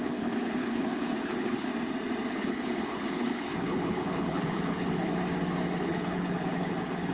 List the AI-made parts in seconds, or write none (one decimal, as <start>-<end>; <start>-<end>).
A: 0.0-1.7; 2.3-5.1; 5.8-7.1